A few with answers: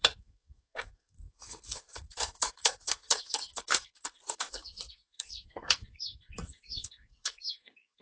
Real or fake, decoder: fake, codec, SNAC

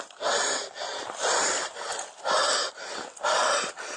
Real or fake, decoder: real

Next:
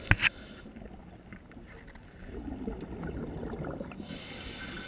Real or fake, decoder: real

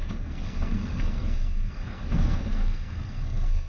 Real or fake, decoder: fake, codec, SNAC